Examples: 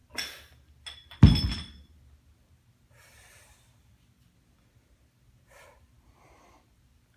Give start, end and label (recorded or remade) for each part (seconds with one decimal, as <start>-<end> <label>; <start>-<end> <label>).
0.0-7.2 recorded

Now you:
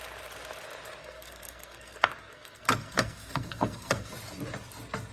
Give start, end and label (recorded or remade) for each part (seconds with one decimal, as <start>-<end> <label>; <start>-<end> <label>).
0.0-1.0 recorded; 1.0-4.1 remade; 4.1-5.1 recorded

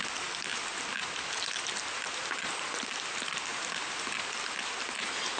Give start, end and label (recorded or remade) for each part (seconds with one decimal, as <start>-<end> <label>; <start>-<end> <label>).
0.0-5.4 recorded

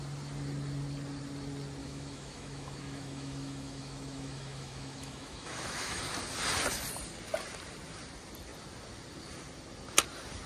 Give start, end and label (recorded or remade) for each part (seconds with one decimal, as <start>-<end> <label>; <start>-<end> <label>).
0.0-1.8 recorded; 1.8-6.0 remade; 6.0-10.5 recorded

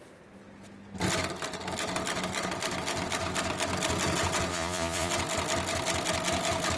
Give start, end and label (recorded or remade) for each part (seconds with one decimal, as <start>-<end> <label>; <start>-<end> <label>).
0.0-4.5 recorded; 4.5-5.1 remade; 5.1-6.8 recorded